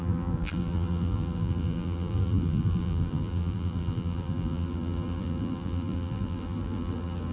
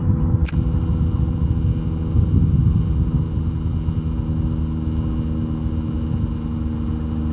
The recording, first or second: second